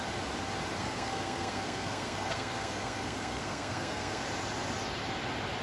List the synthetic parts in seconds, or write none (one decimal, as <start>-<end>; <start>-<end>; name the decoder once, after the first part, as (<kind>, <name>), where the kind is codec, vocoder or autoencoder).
0.8-4.2 (codec, SNAC)